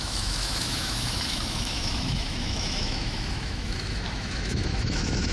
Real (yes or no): no